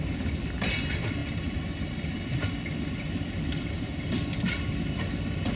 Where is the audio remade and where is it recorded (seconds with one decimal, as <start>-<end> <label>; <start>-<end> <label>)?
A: 0.0-5.6 recorded